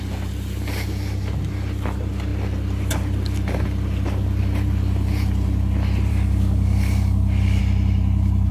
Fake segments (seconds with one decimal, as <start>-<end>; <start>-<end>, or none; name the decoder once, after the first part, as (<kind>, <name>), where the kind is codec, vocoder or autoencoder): 6.1-7.6 (codec, DAC)